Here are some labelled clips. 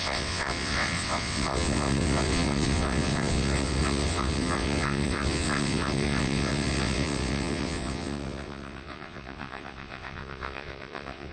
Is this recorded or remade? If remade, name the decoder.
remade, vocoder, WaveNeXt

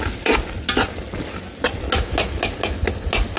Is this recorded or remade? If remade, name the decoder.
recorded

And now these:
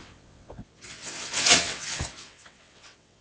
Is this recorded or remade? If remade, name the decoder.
remade, vocoder, WaveNeXt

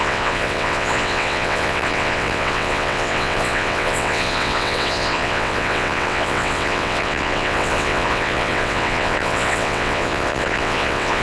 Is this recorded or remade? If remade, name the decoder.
remade, vocoder, WaveNeXt